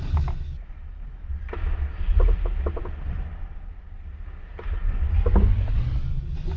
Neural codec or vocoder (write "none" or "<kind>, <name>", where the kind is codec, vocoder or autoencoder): none